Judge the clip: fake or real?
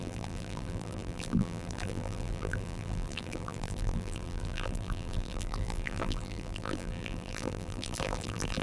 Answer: fake